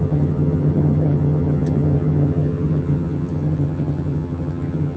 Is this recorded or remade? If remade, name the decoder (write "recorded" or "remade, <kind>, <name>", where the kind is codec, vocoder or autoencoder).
remade, vocoder, HiFi-GAN